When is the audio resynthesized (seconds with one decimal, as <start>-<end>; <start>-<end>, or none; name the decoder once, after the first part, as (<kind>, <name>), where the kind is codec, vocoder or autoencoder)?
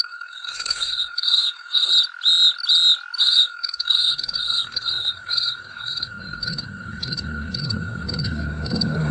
0.0-1.9 (codec, SNAC); 3.2-9.1